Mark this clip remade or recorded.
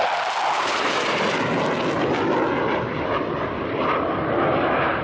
recorded